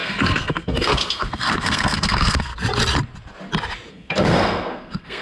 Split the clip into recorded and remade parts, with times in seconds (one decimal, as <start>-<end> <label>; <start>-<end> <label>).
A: 0.0-2.5 remade; 2.5-3.9 recorded; 3.9-5.2 remade